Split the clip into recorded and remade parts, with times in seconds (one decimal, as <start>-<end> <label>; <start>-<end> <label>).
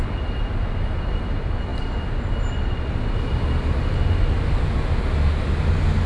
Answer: 0.0-6.1 recorded